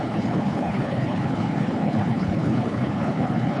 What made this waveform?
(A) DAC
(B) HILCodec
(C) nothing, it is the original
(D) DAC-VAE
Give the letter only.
B